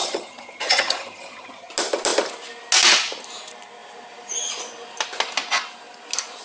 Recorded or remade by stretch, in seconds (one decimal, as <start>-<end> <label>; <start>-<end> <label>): 0.0-1.7 remade; 1.7-6.4 recorded